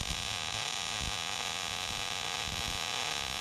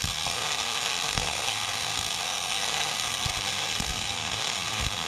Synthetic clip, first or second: second